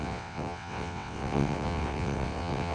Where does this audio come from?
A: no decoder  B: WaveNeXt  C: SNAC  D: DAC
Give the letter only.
B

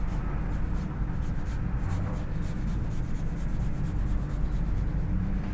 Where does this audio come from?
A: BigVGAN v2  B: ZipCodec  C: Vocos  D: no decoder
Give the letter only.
D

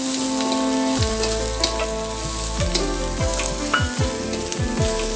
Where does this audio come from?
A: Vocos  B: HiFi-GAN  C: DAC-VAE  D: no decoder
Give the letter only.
D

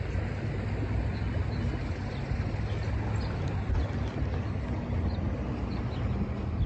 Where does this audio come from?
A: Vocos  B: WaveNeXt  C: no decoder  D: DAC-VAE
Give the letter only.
C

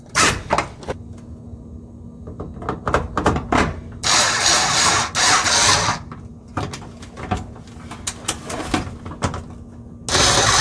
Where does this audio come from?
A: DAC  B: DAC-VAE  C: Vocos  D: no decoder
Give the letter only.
D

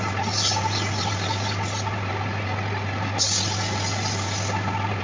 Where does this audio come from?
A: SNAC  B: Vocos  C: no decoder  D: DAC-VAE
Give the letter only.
C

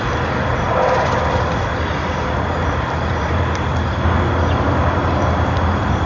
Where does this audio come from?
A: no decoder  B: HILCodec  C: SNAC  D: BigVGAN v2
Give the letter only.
A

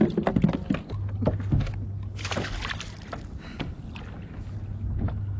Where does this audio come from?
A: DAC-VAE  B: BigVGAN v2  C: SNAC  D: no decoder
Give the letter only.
D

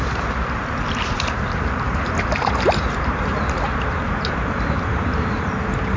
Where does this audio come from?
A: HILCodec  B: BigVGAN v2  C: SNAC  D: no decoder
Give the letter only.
B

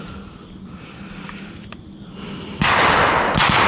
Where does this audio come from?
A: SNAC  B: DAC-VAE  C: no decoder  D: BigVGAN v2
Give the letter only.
C